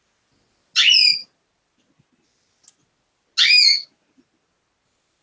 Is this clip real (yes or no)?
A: yes